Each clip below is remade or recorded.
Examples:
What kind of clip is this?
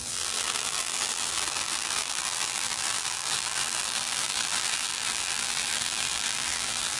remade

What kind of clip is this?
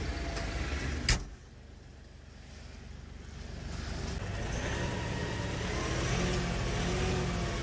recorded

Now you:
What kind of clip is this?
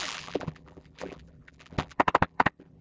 remade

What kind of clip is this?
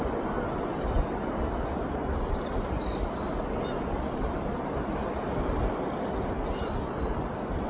recorded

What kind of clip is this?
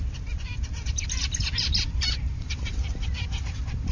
remade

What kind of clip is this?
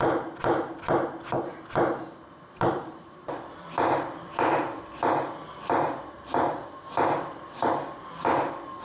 remade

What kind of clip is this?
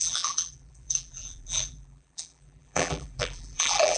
remade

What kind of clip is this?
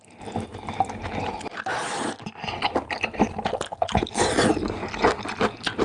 recorded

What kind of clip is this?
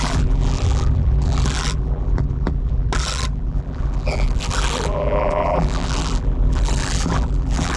remade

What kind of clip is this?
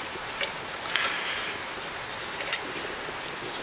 recorded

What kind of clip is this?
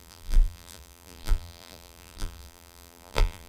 remade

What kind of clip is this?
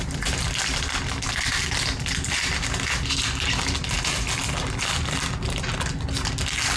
recorded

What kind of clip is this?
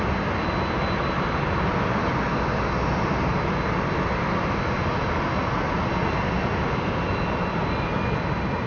recorded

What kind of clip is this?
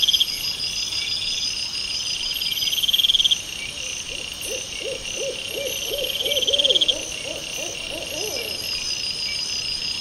recorded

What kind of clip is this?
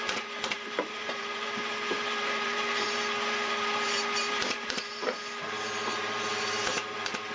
remade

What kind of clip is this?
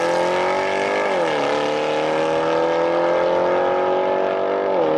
recorded